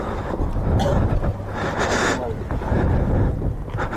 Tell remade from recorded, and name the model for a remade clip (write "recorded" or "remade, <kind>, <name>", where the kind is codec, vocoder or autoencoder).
recorded